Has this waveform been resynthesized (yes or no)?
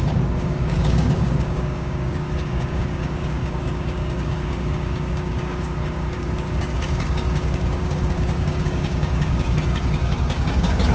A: yes